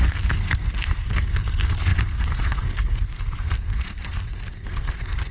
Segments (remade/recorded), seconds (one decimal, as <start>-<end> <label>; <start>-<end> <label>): 0.0-5.3 remade